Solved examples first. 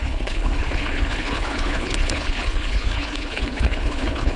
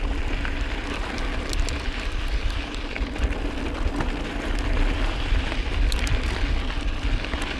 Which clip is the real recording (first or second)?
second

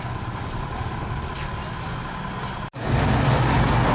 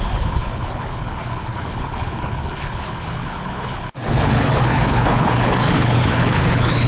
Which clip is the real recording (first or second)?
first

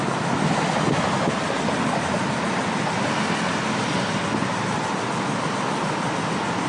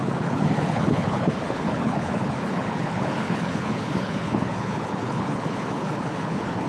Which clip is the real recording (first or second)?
first